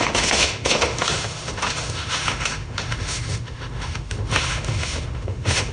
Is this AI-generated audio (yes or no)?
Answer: yes